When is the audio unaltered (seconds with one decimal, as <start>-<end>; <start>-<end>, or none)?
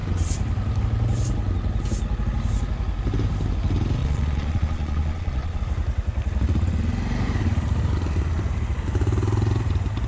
0.0-4.0; 5.6-10.1